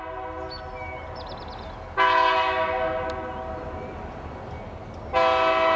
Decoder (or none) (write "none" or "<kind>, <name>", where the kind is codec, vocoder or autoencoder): none